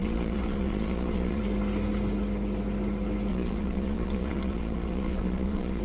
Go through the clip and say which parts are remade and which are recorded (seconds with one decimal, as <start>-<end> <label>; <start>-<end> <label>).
0.0-1.4 remade; 1.4-3.3 recorded; 3.3-5.8 remade